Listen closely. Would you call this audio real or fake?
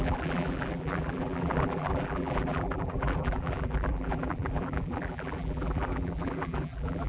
fake